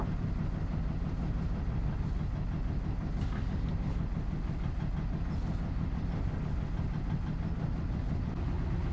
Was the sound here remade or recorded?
recorded